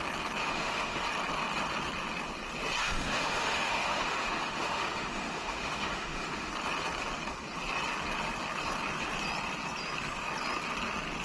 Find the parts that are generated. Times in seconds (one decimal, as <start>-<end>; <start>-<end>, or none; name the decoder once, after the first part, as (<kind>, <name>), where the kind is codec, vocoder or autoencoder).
0.4-1.0 (autoencoder, DAC-VAE); 2.8-6.5